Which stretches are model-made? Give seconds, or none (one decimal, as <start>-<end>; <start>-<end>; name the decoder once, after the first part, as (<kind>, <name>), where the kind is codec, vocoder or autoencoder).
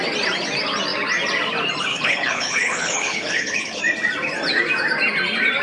1.9-3.8 (codec, HILCodec)